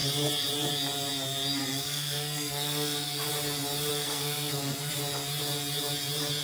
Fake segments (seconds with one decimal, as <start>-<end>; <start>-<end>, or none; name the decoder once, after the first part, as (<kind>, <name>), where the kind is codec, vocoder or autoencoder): 1.6-3.3 (codec, SNAC); 3.9-4.9